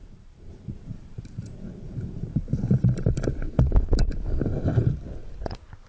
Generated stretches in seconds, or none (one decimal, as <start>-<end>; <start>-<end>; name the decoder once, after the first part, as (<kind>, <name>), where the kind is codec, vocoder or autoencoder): 0.0-3.1 (vocoder, BigVGAN v2)